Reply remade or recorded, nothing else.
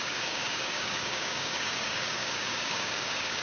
remade